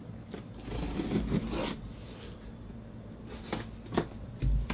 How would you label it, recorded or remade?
recorded